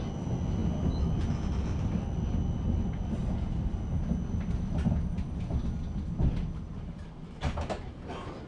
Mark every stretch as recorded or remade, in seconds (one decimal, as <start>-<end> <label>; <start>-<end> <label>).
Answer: 0.0-8.5 recorded